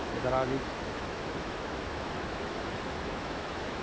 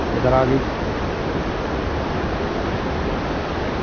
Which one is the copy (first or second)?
first